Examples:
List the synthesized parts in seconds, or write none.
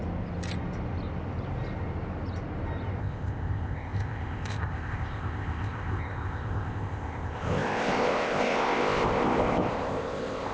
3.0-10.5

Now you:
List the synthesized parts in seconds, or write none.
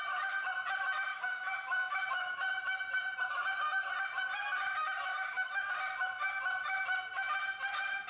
1.1-2.0; 5.1-5.7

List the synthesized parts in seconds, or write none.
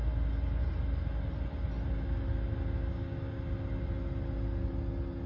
2.9-3.4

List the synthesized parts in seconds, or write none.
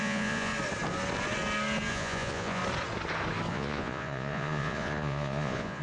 0.0-0.5; 1.9-2.6; 3.5-5.8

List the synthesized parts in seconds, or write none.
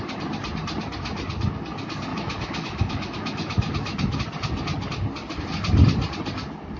2.1-4.2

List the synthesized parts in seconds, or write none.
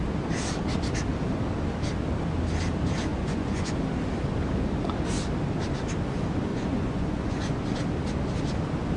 3.1-3.7; 6.5-7.6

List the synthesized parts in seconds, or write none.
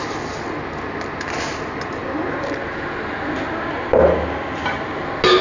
none